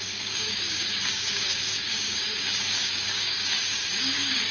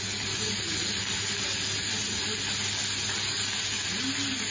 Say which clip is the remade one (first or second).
first